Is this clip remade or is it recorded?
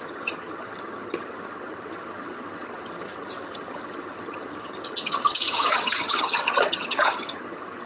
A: remade